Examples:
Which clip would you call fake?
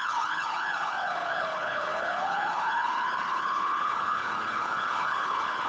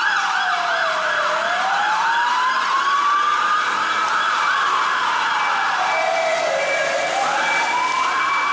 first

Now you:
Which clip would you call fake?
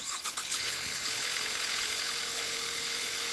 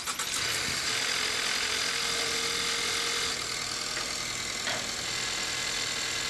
first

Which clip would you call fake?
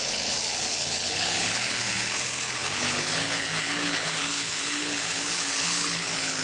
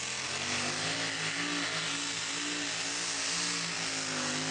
first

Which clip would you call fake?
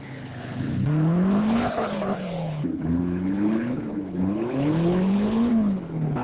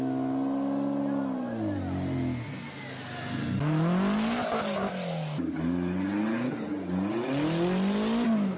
first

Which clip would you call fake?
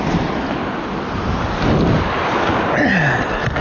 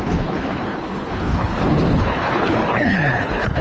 second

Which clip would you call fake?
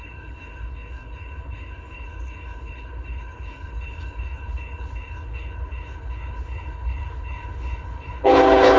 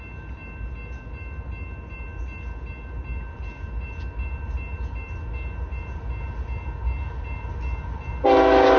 first